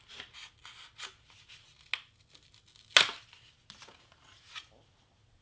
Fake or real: real